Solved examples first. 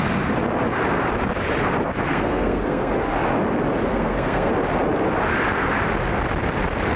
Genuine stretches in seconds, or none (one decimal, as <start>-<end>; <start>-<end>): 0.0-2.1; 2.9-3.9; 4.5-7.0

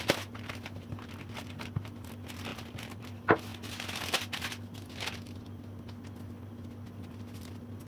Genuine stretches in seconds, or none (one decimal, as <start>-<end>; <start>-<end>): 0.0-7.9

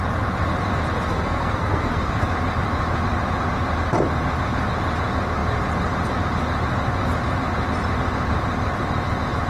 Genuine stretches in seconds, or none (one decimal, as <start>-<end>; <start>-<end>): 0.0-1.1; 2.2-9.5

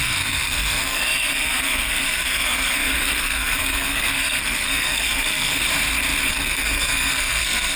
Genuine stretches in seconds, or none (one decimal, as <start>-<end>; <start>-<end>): 5.6-6.3